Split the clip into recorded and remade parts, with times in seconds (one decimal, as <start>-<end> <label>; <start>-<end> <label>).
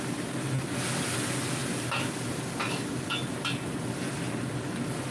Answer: 0.0-5.1 recorded